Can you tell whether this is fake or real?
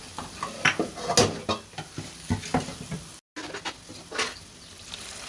real